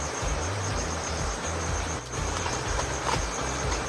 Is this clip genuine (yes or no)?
no